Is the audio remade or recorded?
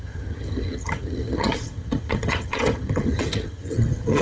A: remade